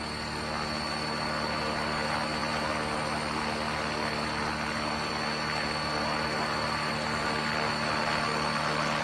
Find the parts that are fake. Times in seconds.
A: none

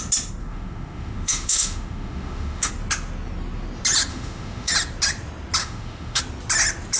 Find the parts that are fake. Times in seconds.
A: 0.4-2.7; 4.1-4.7; 5.6-6.2

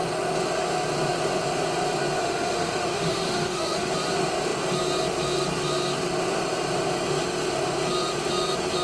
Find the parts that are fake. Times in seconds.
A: 2.2-3.9

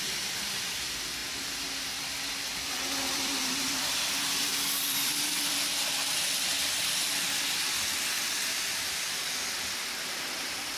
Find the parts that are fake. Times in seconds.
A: none

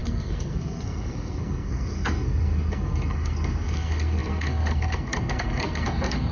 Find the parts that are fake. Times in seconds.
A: 0.0-6.3